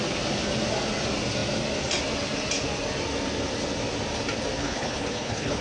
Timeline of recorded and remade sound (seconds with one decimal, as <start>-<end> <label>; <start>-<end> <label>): 0.0-4.6 recorded; 4.6-5.6 remade